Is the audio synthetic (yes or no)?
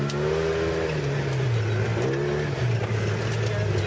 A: no